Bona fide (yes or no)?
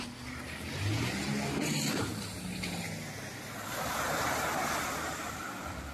yes